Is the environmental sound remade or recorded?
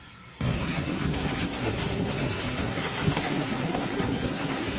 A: remade